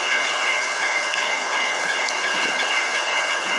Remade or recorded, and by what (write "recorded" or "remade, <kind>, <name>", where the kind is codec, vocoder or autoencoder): remade, codec, HILCodec